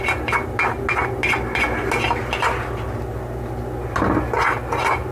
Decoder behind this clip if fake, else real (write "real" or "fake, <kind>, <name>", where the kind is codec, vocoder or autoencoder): real